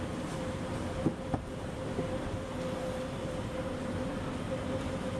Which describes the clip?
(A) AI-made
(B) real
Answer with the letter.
B